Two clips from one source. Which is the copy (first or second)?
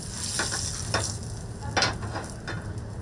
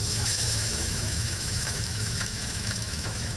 second